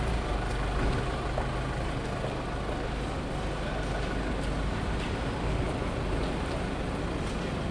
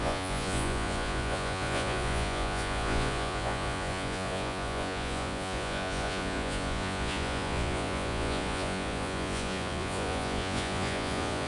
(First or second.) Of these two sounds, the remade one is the second